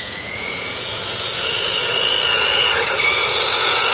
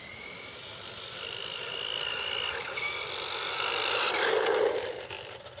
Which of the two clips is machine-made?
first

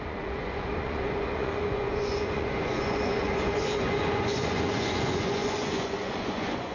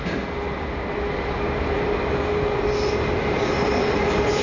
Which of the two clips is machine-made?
first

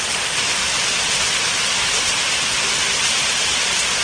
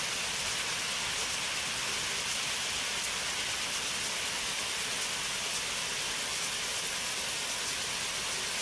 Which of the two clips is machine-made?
first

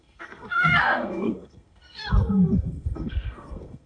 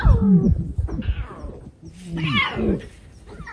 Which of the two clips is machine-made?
first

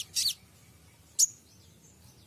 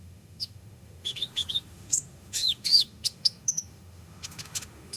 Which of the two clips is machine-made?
second